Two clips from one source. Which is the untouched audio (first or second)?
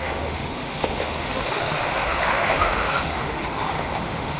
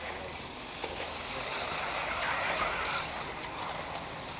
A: second